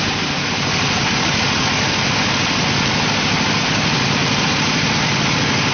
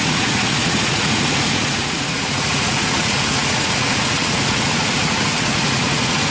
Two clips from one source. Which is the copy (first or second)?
second